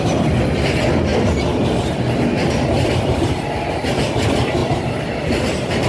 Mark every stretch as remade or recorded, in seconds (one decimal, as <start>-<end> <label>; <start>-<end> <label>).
0.0-5.9 recorded